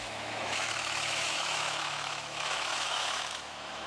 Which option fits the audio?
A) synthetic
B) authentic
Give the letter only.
A